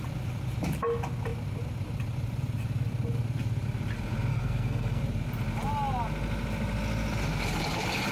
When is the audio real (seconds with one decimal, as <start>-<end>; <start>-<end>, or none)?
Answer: 0.0-4.3; 5.0-8.1